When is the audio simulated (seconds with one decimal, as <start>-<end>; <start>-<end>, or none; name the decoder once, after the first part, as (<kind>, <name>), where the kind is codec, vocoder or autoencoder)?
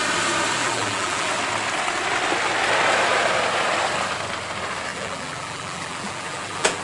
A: 0.6-1.3 (vocoder, BigVGAN v2); 4.9-6.8